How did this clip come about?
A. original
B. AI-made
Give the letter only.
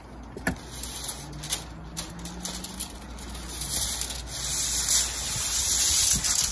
A